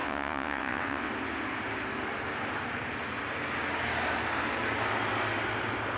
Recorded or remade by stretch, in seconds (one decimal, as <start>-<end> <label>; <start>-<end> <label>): 0.0-1.1 remade; 1.1-6.0 recorded